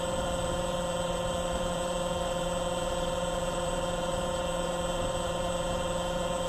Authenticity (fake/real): fake